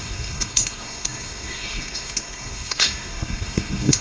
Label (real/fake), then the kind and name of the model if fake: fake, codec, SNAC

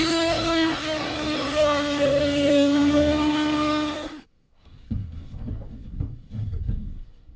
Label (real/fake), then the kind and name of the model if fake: fake, codec, SNAC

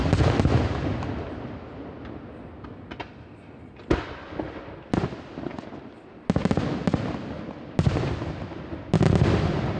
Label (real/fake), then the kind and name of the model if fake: real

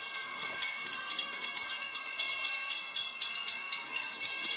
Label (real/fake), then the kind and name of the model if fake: fake, codec, SNAC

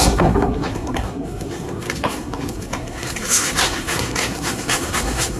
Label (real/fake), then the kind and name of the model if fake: fake, codec, SNAC